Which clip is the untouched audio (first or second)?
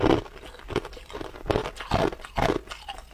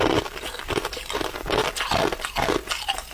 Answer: first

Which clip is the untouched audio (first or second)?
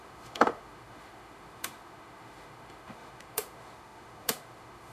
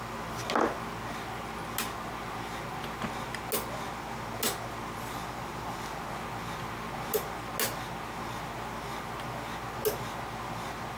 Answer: second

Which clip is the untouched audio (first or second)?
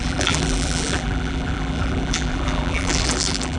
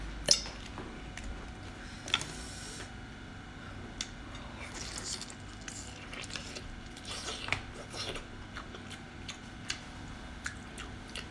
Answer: second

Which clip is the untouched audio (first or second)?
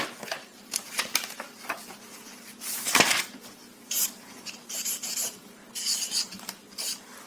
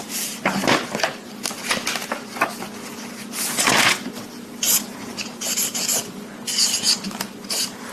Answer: second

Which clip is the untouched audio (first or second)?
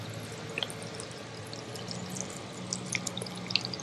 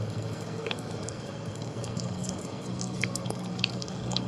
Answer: first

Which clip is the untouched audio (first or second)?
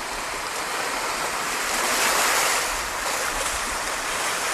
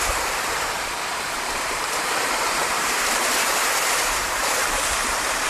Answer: first